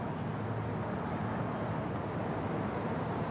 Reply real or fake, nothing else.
real